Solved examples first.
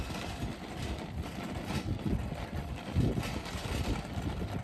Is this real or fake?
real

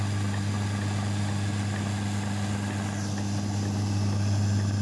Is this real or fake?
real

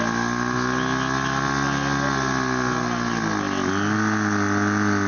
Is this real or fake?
real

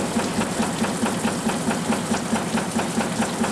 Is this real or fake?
real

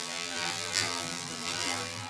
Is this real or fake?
fake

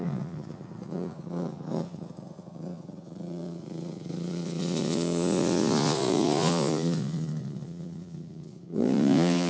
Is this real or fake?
fake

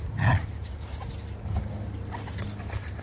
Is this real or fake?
real